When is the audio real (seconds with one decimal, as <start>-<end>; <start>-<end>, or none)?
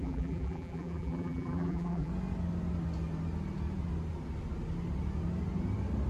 2.1-6.1